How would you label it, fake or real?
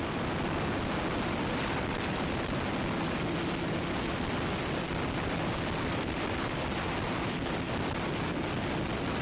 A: real